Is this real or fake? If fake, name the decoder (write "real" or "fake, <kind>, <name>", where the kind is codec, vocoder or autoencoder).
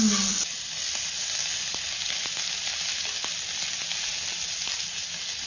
real